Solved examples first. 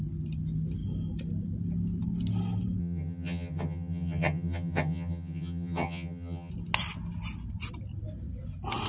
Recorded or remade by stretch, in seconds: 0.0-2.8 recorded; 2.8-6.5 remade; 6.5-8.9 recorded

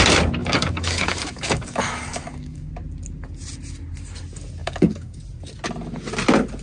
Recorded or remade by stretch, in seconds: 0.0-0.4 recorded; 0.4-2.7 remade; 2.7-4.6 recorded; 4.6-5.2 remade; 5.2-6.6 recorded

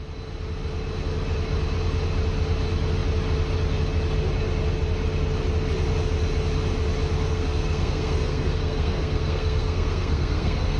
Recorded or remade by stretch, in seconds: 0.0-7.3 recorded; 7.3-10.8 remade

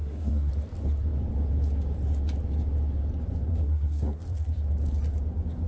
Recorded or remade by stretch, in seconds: 0.0-0.5 remade; 0.5-3.5 recorded; 3.5-4.2 remade; 4.2-5.7 recorded